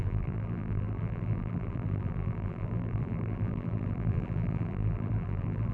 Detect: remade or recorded remade